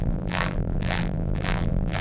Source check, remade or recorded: remade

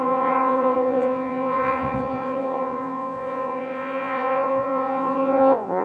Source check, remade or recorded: remade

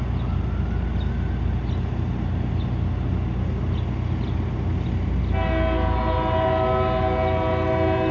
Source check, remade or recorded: recorded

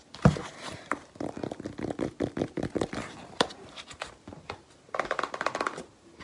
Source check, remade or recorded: recorded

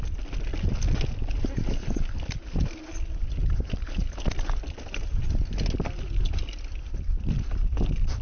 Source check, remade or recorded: recorded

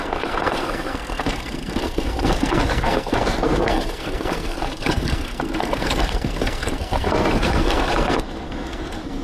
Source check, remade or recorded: remade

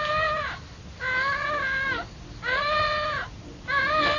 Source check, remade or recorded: recorded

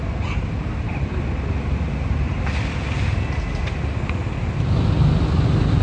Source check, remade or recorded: recorded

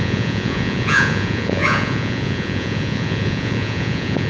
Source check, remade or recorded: remade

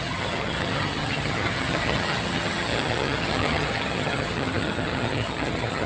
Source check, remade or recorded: remade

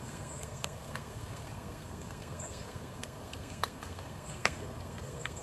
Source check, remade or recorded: remade